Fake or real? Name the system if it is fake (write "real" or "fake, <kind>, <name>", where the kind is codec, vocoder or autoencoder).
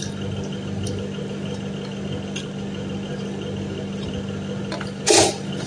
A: real